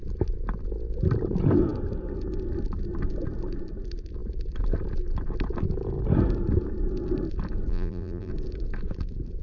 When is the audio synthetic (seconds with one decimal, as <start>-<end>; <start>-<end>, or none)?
7.7-8.3

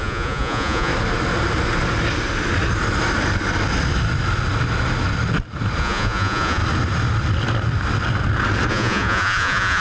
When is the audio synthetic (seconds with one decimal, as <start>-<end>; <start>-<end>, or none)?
0.0-0.9; 5.8-6.6; 8.7-9.8